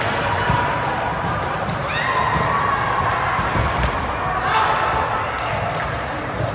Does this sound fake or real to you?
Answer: real